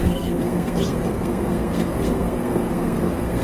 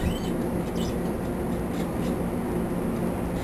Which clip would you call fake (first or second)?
first